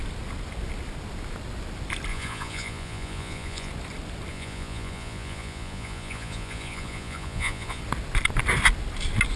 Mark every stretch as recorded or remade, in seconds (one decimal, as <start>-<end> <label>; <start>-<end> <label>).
0.0-2.1 recorded; 2.1-3.7 remade; 3.7-4.3 recorded; 4.3-7.8 remade; 7.8-9.4 recorded